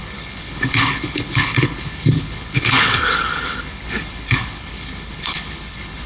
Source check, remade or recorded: remade